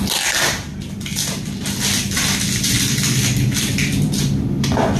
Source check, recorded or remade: recorded